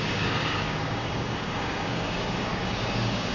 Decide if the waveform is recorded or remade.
remade